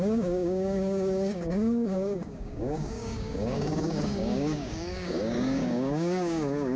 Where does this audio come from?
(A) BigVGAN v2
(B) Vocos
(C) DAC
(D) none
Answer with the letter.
C